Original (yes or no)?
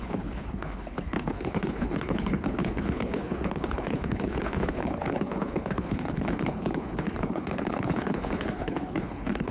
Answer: no